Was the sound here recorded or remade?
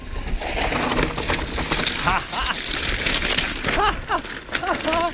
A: recorded